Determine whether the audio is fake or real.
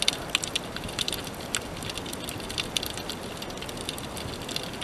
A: real